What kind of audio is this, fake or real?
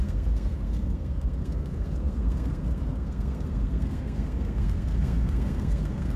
fake